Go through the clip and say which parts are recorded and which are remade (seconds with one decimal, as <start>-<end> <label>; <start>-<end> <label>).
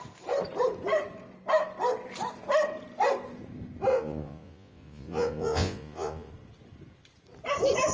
0.0-3.9 recorded; 3.9-6.3 remade; 6.3-7.9 recorded